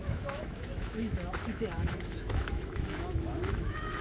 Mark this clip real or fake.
fake